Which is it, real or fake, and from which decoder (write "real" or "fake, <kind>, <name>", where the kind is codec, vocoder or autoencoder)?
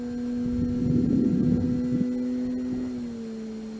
real